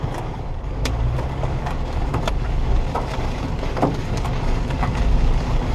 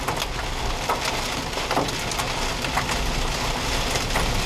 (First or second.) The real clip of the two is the second